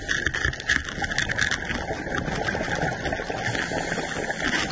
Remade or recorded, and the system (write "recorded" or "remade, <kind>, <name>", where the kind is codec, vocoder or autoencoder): recorded